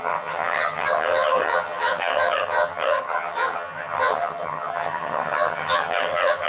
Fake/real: fake